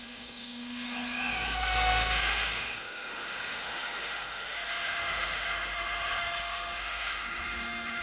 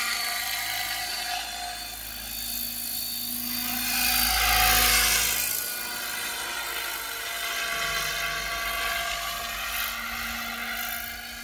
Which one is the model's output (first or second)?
first